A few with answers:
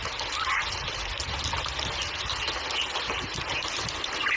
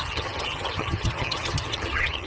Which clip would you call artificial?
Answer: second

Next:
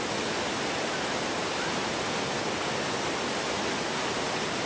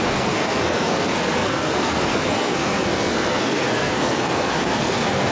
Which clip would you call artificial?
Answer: second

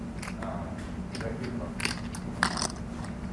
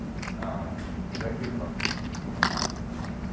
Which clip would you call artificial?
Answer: second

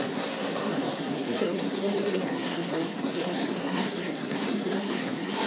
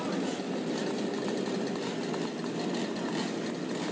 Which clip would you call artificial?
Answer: first